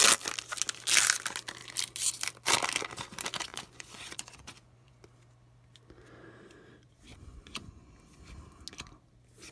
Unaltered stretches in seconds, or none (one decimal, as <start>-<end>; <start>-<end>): 0.0-3.5; 5.0-7.1; 7.9-9.5